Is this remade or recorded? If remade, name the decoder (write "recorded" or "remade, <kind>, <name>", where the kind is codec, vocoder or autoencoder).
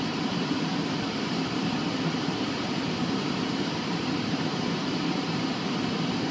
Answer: remade, vocoder, BigVGAN v2